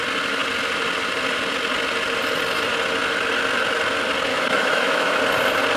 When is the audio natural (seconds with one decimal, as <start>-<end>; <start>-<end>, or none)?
0.0-4.3; 5.2-5.8